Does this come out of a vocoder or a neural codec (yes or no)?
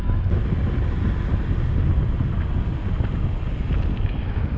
no